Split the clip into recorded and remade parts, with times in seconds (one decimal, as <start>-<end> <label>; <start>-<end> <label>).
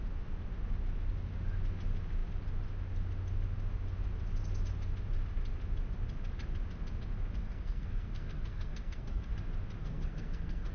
0.0-7.4 recorded; 7.4-9.3 remade; 9.3-9.8 recorded; 9.8-10.7 remade